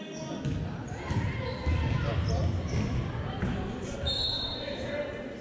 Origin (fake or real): real